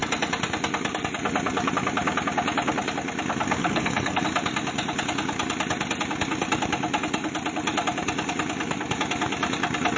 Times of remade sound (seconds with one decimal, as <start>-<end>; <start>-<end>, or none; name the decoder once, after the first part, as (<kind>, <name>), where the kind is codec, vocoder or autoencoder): 3.6-4.2 (codec, SNAC)